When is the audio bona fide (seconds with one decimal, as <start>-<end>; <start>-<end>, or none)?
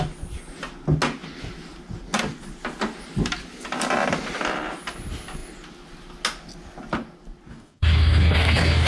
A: 0.0-7.5